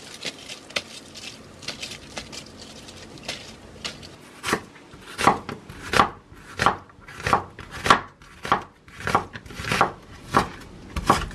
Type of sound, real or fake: real